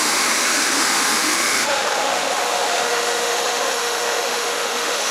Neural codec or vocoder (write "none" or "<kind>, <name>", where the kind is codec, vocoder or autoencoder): autoencoder, DAC-VAE